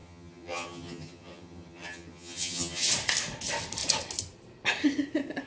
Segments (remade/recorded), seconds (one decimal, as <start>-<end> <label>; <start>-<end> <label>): 0.0-2.9 remade; 2.9-5.5 recorded

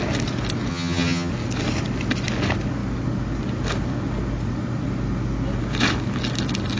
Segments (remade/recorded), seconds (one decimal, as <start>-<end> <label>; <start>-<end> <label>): 0.0-0.7 recorded; 0.7-1.3 remade; 1.3-6.8 recorded

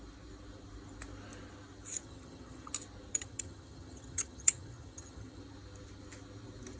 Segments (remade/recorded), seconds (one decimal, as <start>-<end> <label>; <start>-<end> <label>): 0.0-2.0 recorded; 2.0-2.7 remade; 2.7-3.1 recorded; 3.1-5.4 remade; 5.4-6.8 recorded

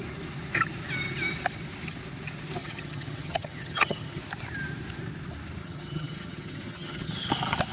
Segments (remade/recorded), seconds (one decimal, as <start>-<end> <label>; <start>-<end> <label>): 0.0-2.6 recorded; 2.6-4.2 remade; 4.2-5.6 recorded; 5.6-7.3 remade; 7.3-7.7 recorded

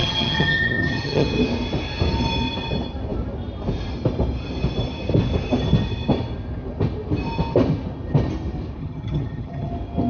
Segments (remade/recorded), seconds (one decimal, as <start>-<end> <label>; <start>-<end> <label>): 0.0-1.4 remade; 1.4-8.8 recorded; 8.8-9.7 remade; 9.7-10.1 recorded

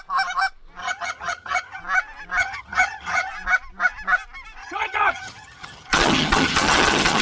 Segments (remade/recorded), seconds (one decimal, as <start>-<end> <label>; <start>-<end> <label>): 0.0-0.8 recorded; 0.8-1.8 remade; 1.8-2.4 recorded; 2.4-3.3 remade; 3.3-4.6 recorded; 4.6-7.2 remade